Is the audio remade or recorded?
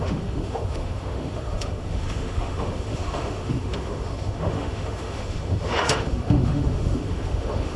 remade